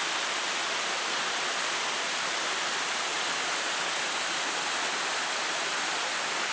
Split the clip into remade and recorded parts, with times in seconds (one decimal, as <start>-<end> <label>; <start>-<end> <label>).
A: 0.0-6.5 recorded